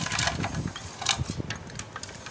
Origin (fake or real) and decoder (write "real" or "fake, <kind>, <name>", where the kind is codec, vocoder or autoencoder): real